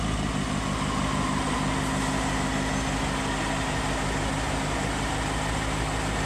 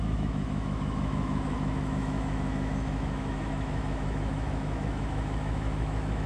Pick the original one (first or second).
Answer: first